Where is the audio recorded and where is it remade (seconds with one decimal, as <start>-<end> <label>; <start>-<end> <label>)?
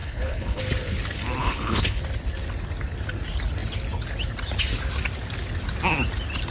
0.0-0.6 remade; 0.6-1.4 recorded; 1.4-2.0 remade; 2.0-6.5 recorded